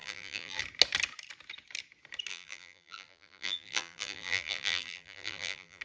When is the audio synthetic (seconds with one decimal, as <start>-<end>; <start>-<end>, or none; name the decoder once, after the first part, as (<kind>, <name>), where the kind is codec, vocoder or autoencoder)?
0.0-0.6 (vocoder, BigVGAN v2); 2.3-5.8